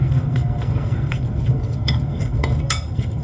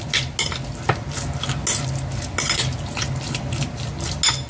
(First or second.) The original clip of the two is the second